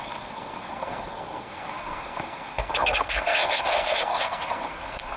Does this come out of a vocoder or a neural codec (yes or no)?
yes